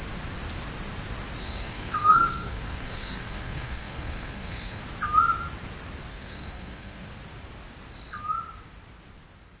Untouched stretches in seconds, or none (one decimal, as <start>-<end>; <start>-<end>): 0.0-1.4; 4.8-6.1; 7.1-9.6